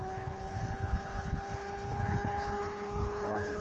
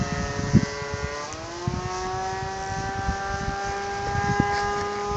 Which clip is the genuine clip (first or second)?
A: second